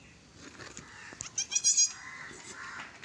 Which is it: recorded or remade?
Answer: recorded